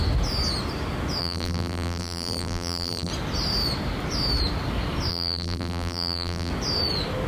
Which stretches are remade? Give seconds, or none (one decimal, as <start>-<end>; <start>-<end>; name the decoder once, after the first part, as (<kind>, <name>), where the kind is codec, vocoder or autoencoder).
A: 1.2-3.1 (vocoder, BigVGAN v2); 5.1-6.5